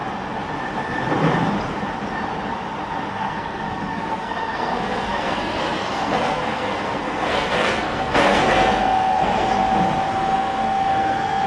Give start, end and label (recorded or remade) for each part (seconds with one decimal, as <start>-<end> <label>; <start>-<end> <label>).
0.0-3.1 recorded; 3.1-9.6 remade; 9.6-10.1 recorded; 10.1-11.5 remade